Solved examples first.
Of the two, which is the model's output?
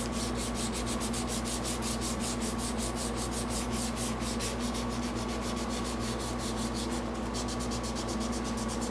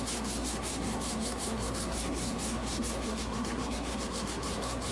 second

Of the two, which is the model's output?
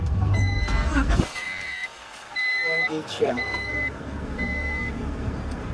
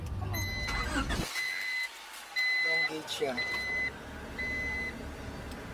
first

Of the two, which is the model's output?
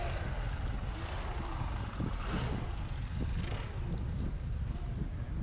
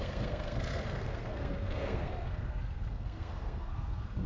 second